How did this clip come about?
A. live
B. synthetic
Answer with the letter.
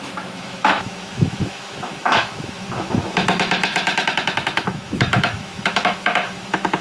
B